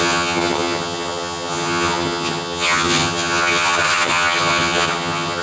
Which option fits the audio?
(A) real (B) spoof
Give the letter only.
B